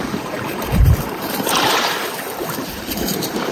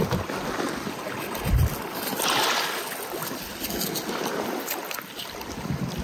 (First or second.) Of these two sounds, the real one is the second